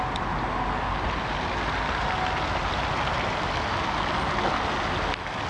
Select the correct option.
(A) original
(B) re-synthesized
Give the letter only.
A